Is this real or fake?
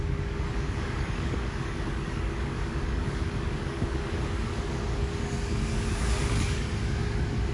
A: fake